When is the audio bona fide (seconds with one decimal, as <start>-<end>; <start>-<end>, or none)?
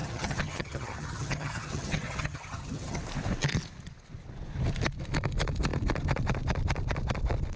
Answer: 3.0-7.6